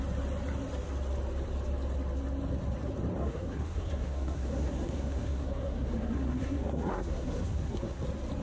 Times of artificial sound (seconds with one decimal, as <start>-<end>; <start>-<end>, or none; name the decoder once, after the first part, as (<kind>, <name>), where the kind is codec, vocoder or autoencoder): 3.2-8.0 (codec, SNAC)